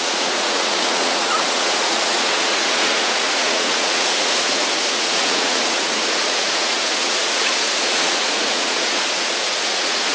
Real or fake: fake